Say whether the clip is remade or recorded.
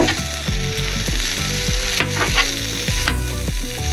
recorded